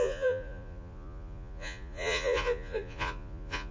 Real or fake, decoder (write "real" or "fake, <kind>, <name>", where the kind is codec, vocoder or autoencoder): fake, vocoder, Vocos